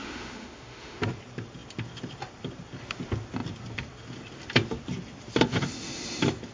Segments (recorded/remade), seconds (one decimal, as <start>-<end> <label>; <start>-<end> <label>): 0.0-1.0 remade; 1.0-6.5 recorded